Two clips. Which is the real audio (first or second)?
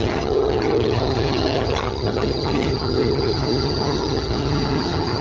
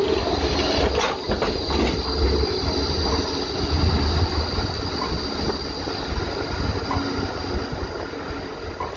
second